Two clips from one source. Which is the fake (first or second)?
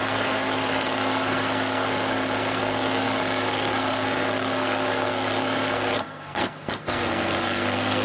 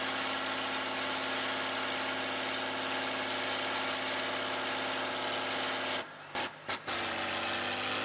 first